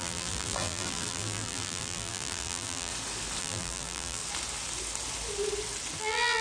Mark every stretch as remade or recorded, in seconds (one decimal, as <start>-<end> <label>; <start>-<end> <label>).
0.0-2.9 remade; 2.9-3.4 recorded; 3.4-4.2 remade; 4.2-6.0 recorded; 6.0-6.4 remade

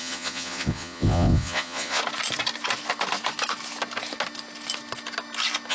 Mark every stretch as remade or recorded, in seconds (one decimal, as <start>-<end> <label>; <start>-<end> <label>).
0.0-2.0 remade; 2.0-5.7 recorded

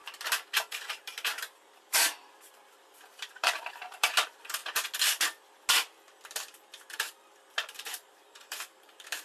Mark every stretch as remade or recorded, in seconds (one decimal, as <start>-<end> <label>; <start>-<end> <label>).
0.0-4.6 remade; 4.6-7.5 recorded; 7.5-9.2 remade